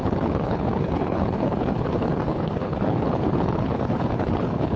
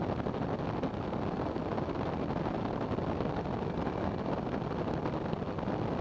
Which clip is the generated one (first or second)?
first